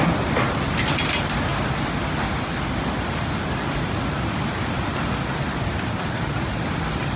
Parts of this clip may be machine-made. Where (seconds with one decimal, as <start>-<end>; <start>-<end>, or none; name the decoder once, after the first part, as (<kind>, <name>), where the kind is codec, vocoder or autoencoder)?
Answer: none